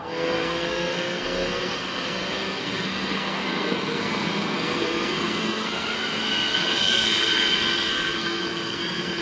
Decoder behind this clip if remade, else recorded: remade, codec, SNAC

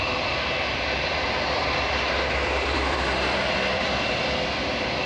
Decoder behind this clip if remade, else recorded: remade, vocoder, BigVGAN v2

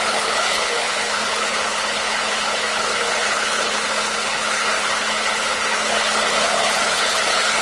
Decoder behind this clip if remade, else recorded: remade, codec, HILCodec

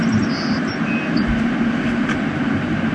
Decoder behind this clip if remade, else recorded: recorded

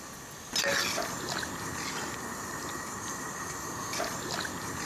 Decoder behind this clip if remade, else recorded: recorded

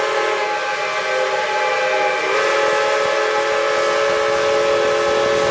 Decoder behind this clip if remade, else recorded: recorded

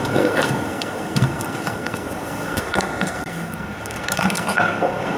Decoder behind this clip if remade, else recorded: remade, codec, SNAC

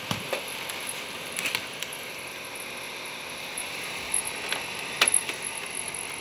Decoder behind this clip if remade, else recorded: recorded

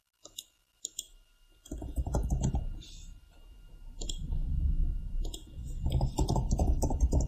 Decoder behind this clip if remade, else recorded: remade, vocoder, BigVGAN v2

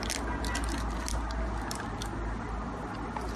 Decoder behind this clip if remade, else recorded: recorded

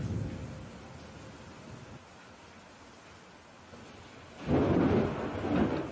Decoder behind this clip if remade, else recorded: recorded